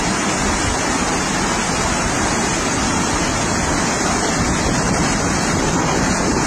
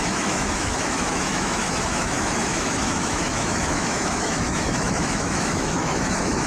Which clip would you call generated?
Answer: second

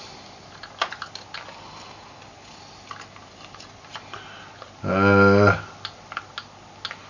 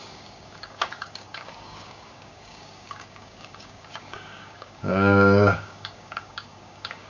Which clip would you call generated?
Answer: second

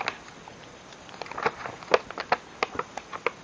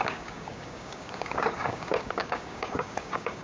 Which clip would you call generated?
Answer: second